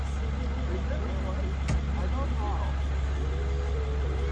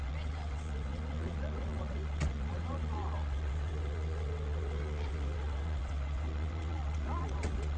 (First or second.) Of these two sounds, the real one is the first